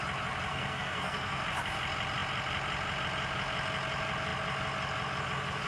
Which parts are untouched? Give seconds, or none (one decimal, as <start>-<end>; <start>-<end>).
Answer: 0.0-0.5; 1.4-5.7